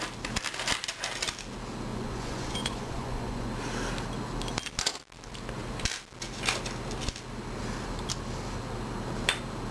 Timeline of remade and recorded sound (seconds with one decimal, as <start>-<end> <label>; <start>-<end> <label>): 0.0-1.9 recorded; 1.9-3.5 remade; 3.5-9.7 recorded